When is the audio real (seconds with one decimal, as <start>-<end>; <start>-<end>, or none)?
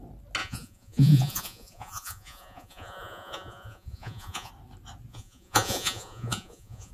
0.0-0.4; 4.5-5.1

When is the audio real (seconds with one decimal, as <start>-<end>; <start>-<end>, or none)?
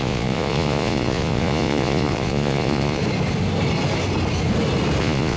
3.0-5.0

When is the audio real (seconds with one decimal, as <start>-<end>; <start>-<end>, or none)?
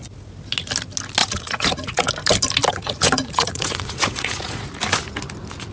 0.0-1.2; 2.1-2.7; 4.7-5.7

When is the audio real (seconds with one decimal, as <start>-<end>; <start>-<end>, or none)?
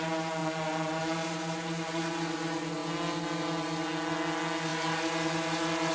0.0-5.9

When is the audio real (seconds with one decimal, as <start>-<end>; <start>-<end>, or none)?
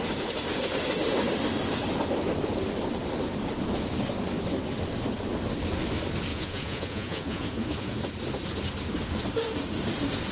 0.0-6.3; 8.0-10.3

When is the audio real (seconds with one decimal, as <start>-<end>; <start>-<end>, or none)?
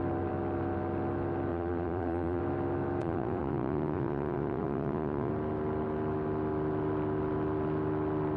0.0-1.5; 2.4-3.0; 5.3-8.4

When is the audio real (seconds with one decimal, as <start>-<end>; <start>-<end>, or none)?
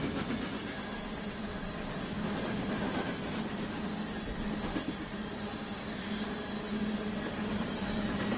0.0-8.4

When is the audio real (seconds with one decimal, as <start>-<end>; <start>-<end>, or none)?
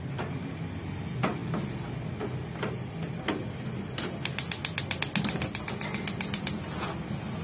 0.0-7.4